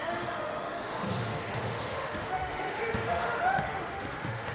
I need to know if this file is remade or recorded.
remade